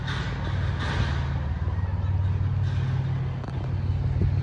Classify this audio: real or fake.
real